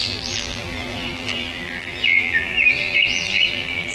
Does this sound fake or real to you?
fake